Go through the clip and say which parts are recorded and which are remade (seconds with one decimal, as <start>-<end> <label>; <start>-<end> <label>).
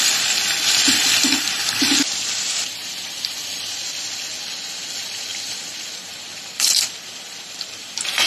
0.0-8.3 remade